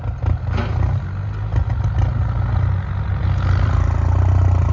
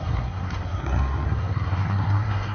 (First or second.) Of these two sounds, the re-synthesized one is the second